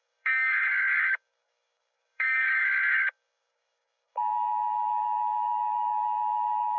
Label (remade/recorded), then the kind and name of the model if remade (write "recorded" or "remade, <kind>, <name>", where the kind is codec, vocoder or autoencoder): remade, codec, DAC